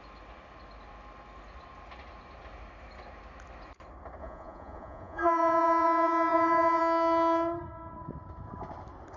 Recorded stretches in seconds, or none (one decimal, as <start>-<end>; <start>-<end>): 0.0-4.2; 6.8-9.2